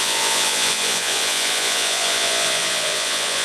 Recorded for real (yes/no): no